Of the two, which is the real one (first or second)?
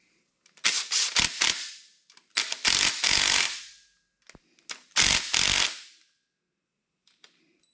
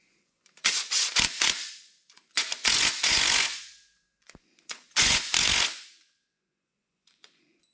first